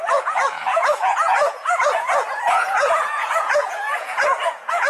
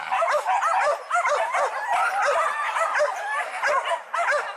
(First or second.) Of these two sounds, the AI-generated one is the first